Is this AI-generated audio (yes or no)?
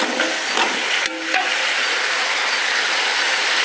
no